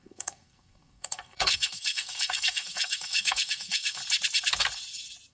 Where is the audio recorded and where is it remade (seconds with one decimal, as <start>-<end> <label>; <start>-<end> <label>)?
0.0-4.0 remade; 4.0-5.3 recorded